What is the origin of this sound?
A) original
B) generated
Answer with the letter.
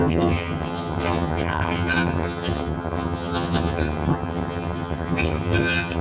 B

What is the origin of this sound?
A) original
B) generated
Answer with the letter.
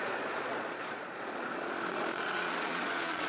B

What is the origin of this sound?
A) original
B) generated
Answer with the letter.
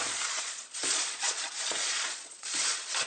B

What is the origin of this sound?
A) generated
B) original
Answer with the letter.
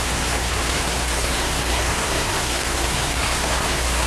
A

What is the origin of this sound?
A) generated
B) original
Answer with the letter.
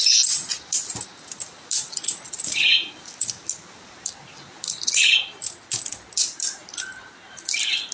B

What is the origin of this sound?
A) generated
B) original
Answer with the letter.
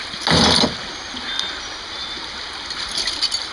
B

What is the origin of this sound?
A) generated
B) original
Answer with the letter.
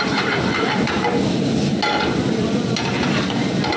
B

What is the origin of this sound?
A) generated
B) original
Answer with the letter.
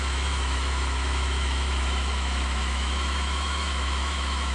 A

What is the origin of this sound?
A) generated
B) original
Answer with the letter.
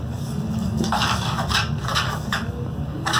A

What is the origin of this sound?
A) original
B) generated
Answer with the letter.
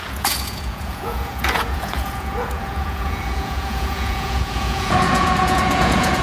B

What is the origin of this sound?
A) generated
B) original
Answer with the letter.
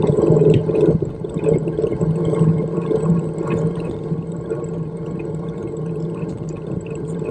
A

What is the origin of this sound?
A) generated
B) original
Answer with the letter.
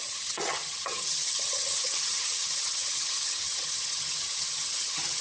A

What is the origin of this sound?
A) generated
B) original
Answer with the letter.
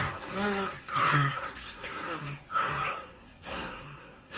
A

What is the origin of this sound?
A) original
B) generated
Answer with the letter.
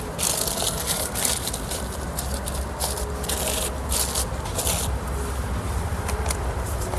A